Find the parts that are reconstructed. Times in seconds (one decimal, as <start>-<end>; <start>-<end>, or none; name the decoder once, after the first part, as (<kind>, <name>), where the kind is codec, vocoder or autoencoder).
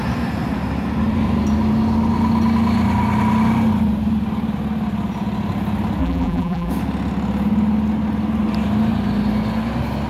6.0-6.7 (vocoder, BigVGAN v2)